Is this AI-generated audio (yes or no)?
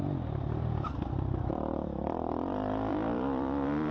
yes